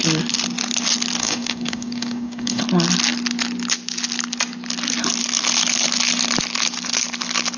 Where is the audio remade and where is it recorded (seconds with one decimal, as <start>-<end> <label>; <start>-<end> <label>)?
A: 0.0-1.2 recorded; 1.2-2.6 remade; 2.6-7.6 recorded